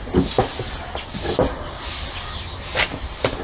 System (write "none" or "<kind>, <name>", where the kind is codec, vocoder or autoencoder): none